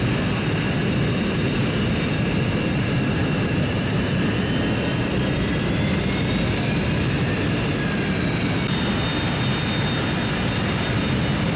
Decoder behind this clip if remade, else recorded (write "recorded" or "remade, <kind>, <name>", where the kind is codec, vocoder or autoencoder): recorded